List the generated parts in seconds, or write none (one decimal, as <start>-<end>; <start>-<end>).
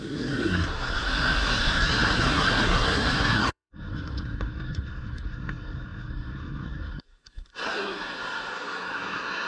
0.0-9.5